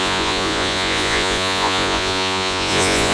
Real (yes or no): no